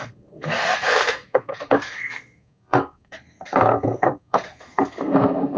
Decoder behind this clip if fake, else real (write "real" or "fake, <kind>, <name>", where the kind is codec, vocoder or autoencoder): fake, codec, SNAC